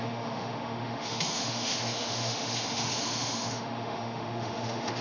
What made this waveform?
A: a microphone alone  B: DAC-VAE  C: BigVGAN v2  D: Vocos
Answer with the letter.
B